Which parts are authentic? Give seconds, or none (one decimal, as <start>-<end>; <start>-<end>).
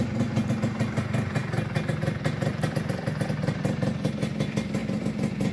0.0-5.5